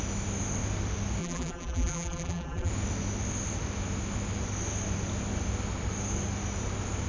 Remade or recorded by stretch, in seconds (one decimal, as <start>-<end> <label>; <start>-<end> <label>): 0.0-1.2 recorded; 1.2-2.7 remade; 2.7-7.1 recorded